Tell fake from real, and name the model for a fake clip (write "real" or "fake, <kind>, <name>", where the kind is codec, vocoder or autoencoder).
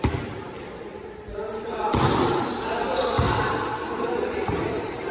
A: fake, vocoder, BigVGAN v2